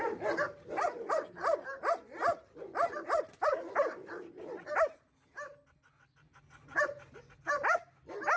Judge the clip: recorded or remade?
recorded